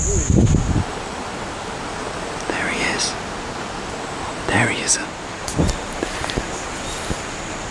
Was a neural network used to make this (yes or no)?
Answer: no